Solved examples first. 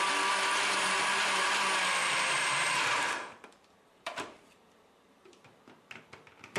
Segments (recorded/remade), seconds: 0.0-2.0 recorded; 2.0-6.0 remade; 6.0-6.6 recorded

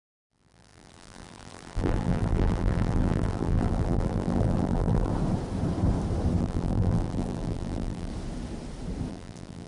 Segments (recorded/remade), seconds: 0.0-5.1 remade; 5.1-6.4 recorded; 6.4-8.1 remade; 8.1-9.1 recorded; 9.1-9.7 remade